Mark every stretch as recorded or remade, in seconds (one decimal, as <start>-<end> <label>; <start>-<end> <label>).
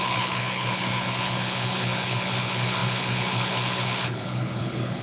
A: 0.0-5.0 remade